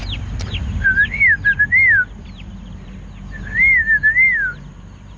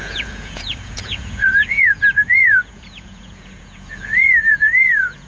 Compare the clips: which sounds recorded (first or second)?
first